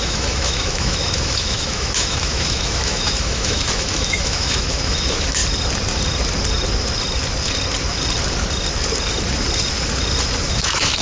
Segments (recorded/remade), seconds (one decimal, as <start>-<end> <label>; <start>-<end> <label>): 0.0-5.4 remade; 5.4-10.5 recorded; 10.5-11.0 remade